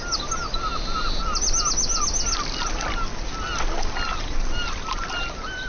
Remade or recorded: recorded